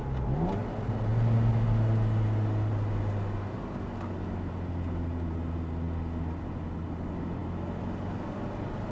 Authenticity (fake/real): real